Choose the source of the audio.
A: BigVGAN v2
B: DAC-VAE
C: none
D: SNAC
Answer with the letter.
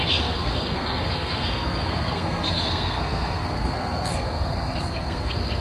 D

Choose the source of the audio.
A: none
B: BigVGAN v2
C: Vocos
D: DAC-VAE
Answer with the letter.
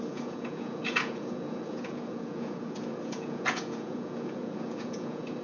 C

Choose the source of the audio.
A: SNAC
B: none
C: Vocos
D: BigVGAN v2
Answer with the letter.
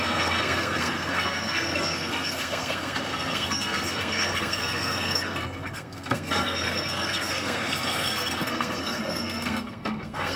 A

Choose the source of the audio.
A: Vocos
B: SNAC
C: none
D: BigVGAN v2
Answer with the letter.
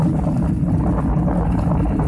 C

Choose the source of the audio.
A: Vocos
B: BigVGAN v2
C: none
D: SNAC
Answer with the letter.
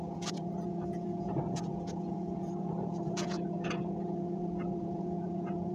A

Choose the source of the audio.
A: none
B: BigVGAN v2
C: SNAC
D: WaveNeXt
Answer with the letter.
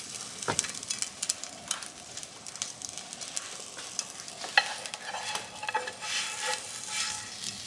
A